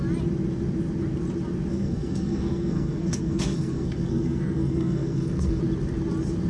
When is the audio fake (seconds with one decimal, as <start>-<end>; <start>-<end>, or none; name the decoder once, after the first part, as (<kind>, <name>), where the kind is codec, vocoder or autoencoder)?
1.7-5.6 (codec, SNAC)